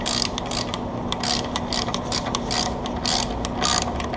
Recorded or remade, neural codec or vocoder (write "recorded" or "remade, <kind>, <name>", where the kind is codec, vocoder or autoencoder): recorded